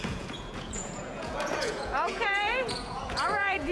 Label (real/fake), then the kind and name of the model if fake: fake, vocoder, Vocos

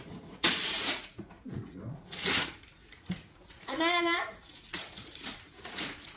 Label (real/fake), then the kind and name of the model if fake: fake, vocoder, Vocos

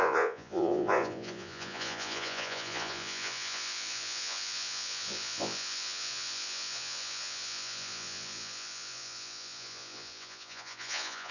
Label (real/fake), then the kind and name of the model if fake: fake, vocoder, Vocos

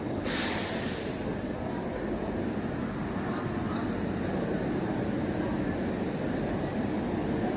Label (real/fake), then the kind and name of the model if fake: real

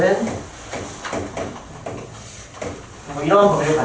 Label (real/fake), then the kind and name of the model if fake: real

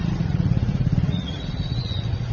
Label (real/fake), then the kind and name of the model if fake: fake, vocoder, Vocos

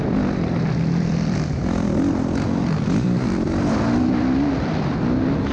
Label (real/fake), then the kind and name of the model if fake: real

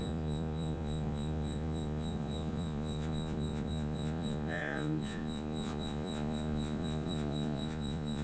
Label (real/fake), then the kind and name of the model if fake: fake, vocoder, Vocos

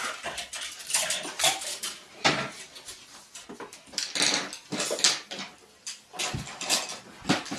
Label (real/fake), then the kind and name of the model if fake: real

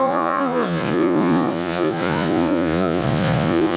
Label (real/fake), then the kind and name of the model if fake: fake, vocoder, Vocos